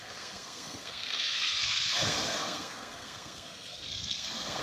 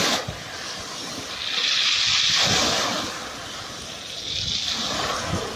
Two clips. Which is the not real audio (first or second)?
first